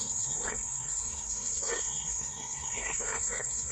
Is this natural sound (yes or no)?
no